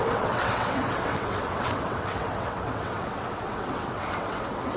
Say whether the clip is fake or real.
fake